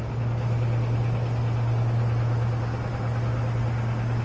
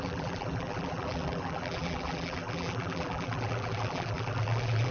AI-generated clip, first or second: second